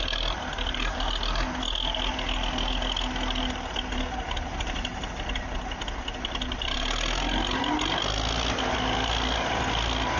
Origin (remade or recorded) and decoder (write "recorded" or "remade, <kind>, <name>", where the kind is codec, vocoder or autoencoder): recorded